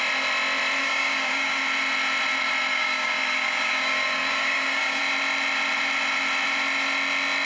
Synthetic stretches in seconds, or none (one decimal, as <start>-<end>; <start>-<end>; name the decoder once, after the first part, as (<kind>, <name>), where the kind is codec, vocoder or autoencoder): 0.8-1.6 (codec, DAC); 2.7-5.0